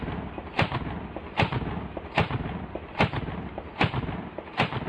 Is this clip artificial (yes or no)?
no